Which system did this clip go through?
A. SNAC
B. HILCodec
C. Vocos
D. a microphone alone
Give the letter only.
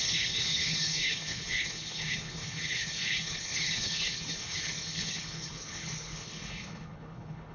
B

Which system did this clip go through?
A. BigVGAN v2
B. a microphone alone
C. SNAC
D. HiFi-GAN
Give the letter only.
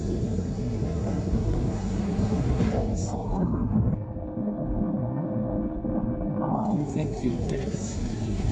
C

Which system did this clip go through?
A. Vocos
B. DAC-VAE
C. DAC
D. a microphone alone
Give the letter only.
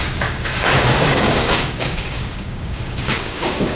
C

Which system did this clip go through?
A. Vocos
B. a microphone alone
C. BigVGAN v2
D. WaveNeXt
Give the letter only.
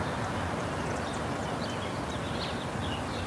B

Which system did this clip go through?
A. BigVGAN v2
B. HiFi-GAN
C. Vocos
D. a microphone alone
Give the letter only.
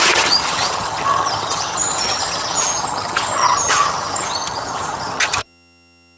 B